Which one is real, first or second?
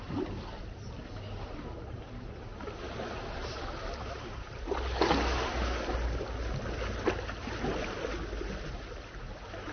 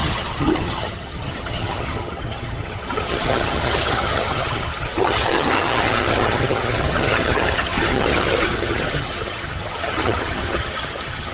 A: first